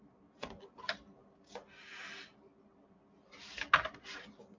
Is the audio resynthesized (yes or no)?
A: no